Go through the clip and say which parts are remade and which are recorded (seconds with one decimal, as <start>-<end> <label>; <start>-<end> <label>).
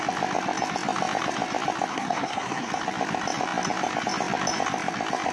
0.0-1.9 recorded; 1.9-2.7 remade; 2.7-5.3 recorded